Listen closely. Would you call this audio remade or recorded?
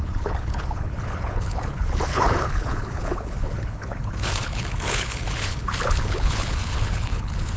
remade